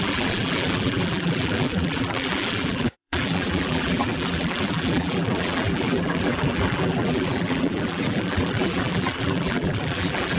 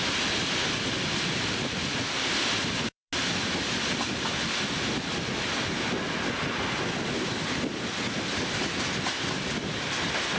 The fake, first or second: first